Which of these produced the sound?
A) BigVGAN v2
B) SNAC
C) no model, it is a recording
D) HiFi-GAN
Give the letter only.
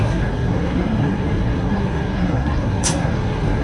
B